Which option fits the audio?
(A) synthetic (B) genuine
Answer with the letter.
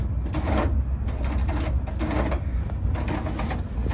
B